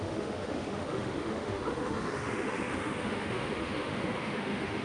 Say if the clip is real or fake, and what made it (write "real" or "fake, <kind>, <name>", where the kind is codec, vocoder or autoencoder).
fake, autoencoder, DAC-VAE